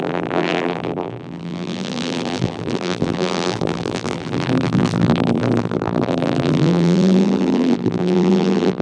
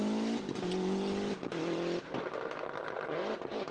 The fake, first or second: first